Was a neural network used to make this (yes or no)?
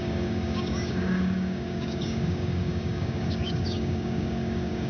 yes